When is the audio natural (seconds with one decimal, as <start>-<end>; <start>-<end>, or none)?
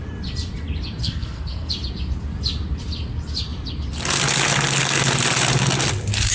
0.0-1.0; 1.7-6.3